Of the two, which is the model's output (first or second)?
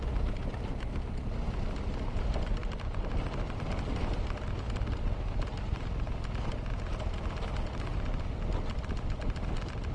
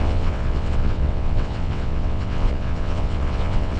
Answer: second